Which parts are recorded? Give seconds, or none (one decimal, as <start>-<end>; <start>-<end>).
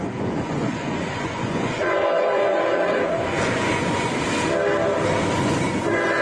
4.1-5.3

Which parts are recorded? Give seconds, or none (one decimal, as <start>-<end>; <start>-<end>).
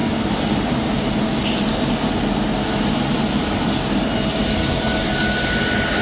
0.0-6.0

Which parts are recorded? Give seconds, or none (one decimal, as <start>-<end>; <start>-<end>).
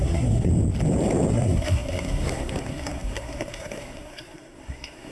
0.5-1.3